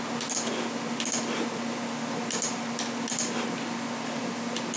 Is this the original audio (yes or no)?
yes